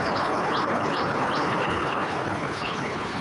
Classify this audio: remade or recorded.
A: remade